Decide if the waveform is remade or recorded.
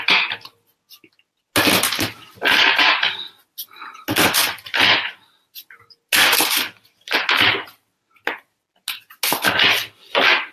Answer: recorded